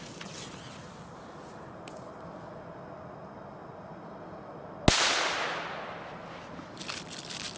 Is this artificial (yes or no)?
no